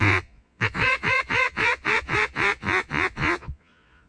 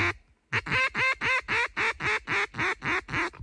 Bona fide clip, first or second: second